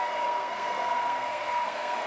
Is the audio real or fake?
fake